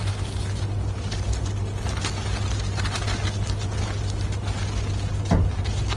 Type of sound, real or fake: real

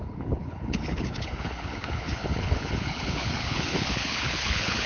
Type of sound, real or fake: fake